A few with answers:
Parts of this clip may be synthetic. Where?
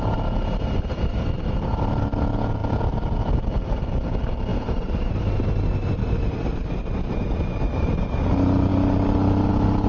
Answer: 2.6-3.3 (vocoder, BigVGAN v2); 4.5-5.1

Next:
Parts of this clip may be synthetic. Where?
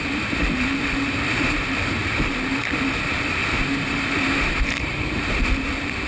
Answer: 0.0-3.4 (vocoder, BigVGAN v2); 4.6-6.1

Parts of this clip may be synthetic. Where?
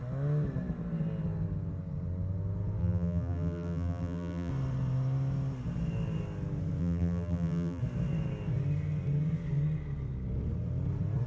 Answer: 2.8-4.5 (vocoder, BigVGAN v2); 6.8-7.8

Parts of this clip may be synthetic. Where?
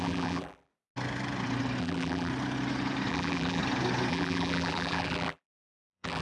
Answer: 0.0-0.7 (vocoder, BigVGAN v2); 1.8-2.3; 3.1-3.6; 4.1-6.2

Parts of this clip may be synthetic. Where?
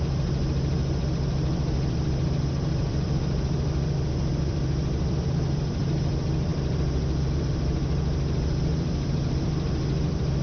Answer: 0.0-10.4 (vocoder, BigVGAN v2)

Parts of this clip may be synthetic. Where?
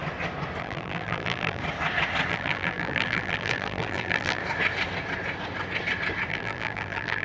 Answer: 0.6-1.6 (vocoder, BigVGAN v2); 2.3-4.4; 6.3-7.2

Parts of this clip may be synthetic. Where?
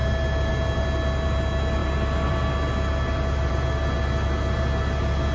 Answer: none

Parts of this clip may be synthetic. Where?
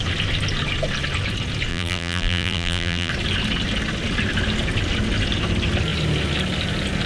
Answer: 1.7-3.1 (vocoder, BigVGAN v2)